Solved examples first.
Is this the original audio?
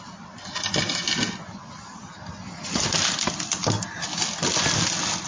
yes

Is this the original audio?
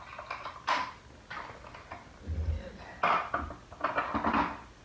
yes